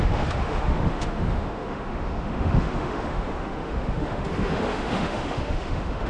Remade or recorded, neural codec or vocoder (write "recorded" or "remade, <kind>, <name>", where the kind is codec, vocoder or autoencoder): remade, autoencoder, DAC-VAE